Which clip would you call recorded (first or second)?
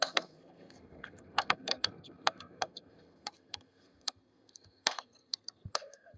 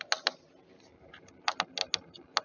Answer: second